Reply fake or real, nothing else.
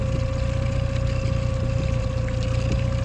real